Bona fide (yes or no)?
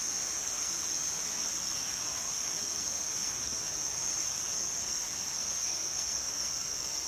no